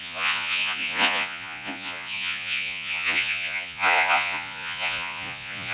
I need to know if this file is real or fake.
fake